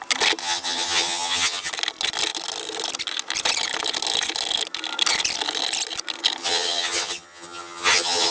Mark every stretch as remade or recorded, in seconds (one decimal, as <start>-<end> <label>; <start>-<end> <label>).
0.0-0.4 recorded; 0.4-1.7 remade; 1.7-6.4 recorded; 6.4-8.3 remade

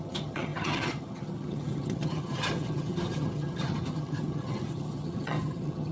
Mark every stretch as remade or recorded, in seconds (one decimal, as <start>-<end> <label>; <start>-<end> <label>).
0.0-5.9 remade

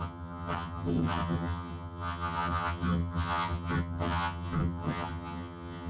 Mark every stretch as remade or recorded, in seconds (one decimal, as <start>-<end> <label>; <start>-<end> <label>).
0.0-5.9 remade

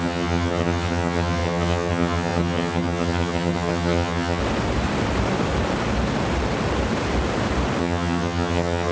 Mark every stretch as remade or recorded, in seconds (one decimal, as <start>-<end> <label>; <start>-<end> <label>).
0.0-4.4 remade; 4.4-7.8 recorded; 7.8-8.9 remade

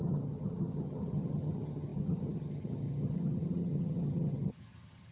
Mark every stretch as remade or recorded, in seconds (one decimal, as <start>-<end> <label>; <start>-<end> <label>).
0.0-5.1 remade

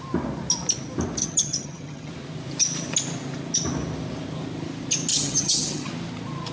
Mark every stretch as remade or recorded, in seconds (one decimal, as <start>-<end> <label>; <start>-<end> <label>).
0.0-1.2 recorded; 1.2-2.1 remade; 2.1-5.1 recorded; 5.1-5.9 remade; 5.9-6.5 recorded

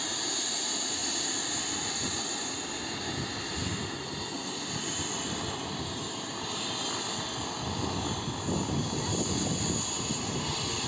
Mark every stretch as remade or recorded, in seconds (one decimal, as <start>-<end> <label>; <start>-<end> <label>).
0.0-10.9 recorded